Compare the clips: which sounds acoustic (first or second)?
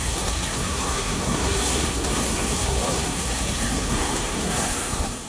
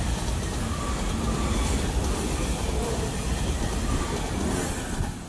second